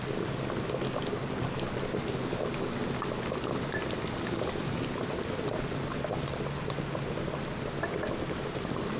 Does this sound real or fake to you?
real